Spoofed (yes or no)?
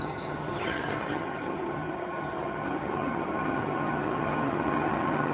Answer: yes